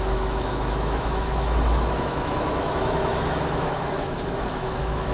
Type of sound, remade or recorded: remade